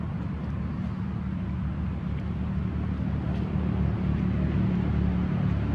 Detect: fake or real real